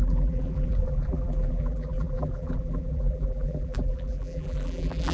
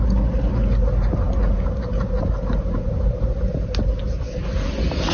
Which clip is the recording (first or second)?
second